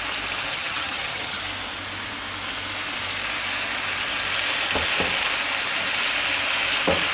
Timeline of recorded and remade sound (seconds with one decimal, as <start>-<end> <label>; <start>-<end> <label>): 0.0-0.5 recorded; 0.5-1.4 remade; 1.4-7.1 recorded